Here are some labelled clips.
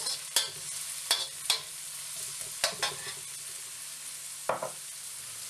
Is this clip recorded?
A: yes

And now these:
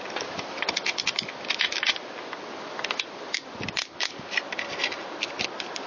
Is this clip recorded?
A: yes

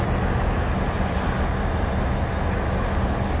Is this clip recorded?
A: yes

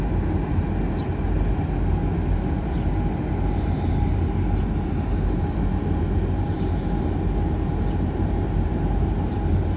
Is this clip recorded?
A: yes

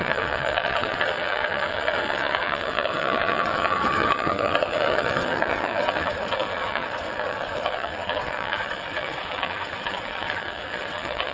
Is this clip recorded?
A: no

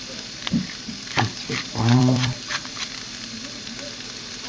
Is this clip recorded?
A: no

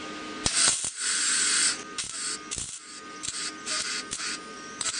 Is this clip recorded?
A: yes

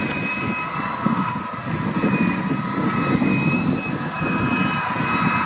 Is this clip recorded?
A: yes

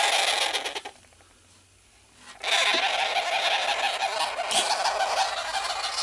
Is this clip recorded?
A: yes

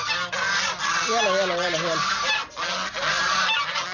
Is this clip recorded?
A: yes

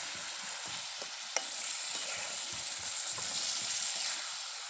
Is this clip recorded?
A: yes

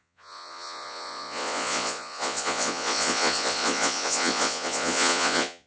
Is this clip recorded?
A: no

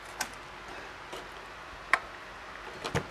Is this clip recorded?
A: yes